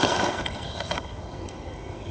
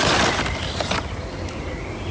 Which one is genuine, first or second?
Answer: second